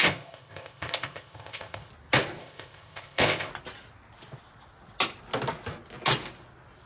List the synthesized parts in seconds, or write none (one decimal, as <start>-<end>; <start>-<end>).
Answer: 0.0-1.9; 2.4-3.5